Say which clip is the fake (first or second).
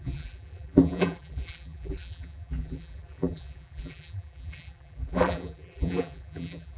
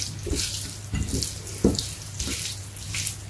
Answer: first